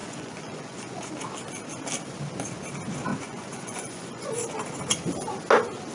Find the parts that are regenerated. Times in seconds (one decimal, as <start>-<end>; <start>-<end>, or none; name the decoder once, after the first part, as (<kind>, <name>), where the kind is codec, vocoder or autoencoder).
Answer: 0.0-1.1 (vocoder, Vocos); 3.1-4.3